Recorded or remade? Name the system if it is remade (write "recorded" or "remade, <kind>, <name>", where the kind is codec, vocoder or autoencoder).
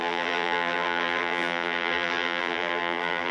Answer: remade, vocoder, BigVGAN v2